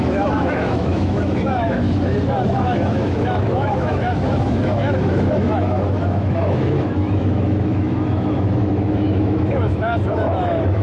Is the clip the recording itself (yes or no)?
no